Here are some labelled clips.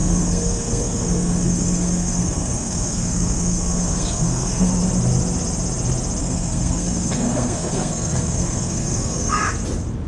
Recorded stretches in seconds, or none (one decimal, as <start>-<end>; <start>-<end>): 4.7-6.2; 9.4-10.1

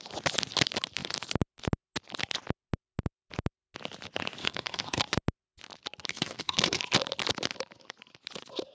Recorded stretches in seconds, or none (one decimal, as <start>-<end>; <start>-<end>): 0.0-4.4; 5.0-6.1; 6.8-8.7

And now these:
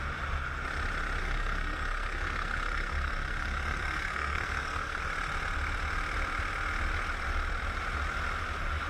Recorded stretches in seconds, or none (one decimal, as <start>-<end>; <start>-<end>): 0.0-1.2; 5.0-8.9

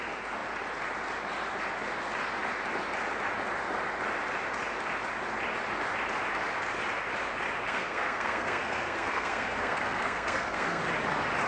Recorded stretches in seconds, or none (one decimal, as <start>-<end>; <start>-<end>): 0.0-7.7; 10.8-11.5

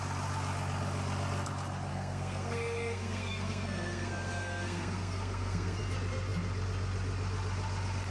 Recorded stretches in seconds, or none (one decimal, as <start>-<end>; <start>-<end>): 0.0-1.9; 5.8-8.1